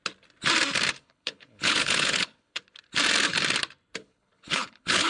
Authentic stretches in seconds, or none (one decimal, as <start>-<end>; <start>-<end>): 0.0-1.0; 2.6-4.0